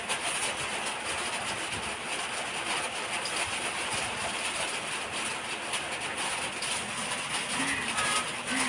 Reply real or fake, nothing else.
real